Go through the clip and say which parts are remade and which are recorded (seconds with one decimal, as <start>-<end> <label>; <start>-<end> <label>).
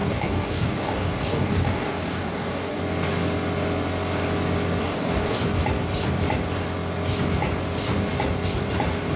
0.0-2.8 remade; 2.8-4.8 recorded; 4.8-5.4 remade; 5.4-9.2 recorded